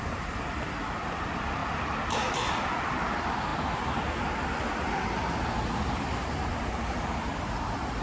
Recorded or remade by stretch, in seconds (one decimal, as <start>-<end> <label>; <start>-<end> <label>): 0.0-8.0 recorded